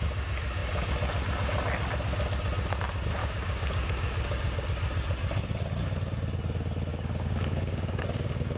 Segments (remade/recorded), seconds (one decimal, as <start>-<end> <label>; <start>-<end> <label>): 0.0-3.2 recorded; 3.2-4.6 remade; 4.6-6.9 recorded; 6.9-8.6 remade